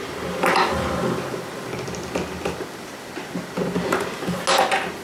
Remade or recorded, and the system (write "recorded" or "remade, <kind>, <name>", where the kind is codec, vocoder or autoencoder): recorded